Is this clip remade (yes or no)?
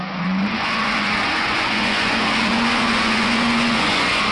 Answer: yes